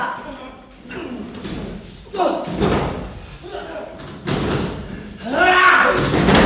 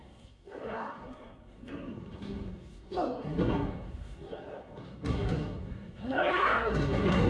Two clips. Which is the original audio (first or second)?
first